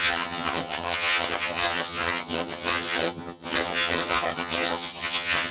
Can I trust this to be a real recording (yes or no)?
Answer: no